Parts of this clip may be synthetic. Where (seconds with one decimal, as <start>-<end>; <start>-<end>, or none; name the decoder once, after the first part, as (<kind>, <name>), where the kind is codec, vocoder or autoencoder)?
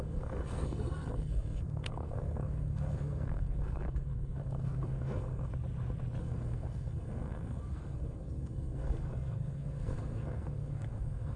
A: 0.0-5.5 (codec, SNAC); 6.2-11.4